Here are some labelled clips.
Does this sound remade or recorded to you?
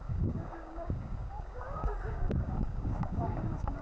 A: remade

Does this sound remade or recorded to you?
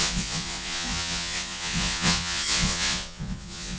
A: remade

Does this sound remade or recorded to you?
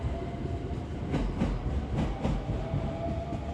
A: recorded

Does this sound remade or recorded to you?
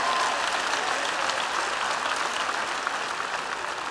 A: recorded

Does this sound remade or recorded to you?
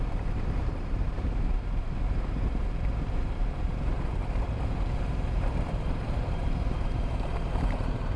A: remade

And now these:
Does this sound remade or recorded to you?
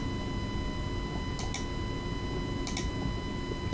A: recorded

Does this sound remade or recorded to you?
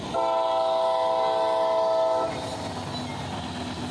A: recorded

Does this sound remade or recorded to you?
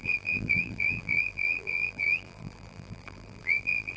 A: remade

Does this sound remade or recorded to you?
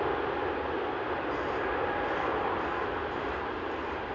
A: recorded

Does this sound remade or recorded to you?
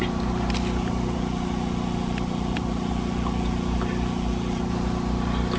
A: recorded